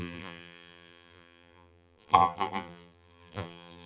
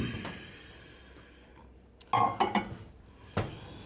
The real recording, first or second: second